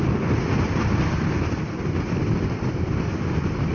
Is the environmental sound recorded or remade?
recorded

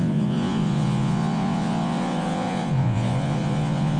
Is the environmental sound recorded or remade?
remade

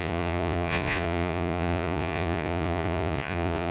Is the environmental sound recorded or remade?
remade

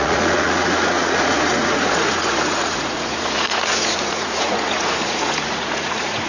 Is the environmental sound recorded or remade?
remade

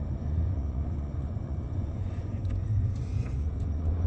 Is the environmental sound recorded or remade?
remade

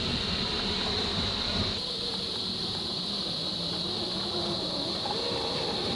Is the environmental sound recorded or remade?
recorded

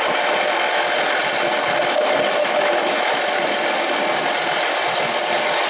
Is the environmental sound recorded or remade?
recorded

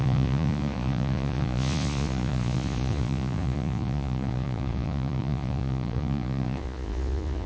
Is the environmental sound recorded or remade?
remade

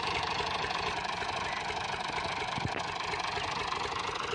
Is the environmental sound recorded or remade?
recorded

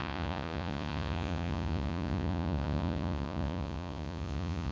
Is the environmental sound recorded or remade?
remade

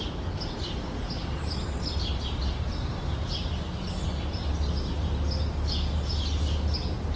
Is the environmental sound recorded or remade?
recorded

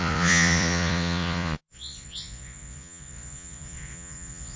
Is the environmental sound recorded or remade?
remade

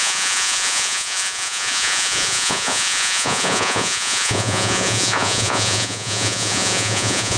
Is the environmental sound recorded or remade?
remade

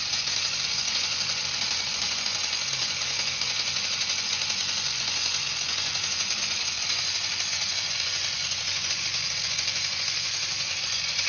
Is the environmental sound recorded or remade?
remade